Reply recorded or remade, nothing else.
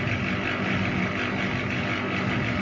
recorded